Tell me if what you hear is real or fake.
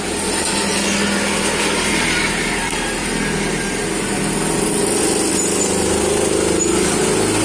real